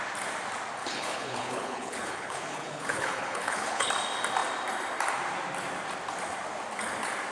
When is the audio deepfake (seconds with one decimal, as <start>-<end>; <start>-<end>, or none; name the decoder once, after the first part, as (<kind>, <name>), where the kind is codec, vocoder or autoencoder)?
0.8-3.9 (codec, HILCodec)